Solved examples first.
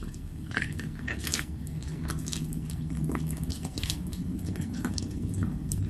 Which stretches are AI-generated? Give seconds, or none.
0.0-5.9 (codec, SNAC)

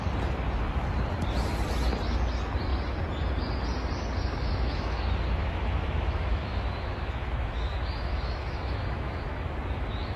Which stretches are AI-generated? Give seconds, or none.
4.3-5.0 (autoencoder, DAC-VAE); 5.4-10.2

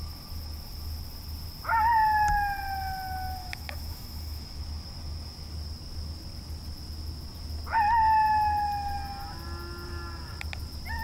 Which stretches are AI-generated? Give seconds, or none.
3.4-4.6 (autoencoder, DAC-VAE)

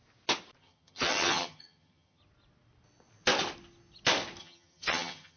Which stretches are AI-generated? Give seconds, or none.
0.6-2.2 (vocoder, HiFi-GAN); 4.4-5.4

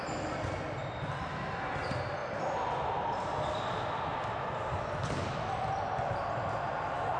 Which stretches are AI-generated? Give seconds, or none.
none

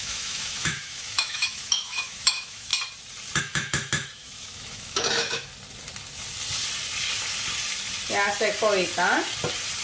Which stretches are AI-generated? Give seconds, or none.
0.0-2.7 (autoencoder, DAC-VAE); 3.4-5.5

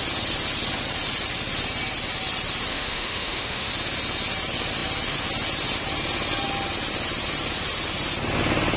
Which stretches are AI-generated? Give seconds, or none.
2.7-3.7 (autoencoder, DAC-VAE)

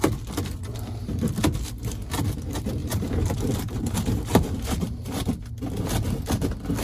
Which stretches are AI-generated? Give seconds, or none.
2.8-5.5 (vocoder, BigVGAN v2)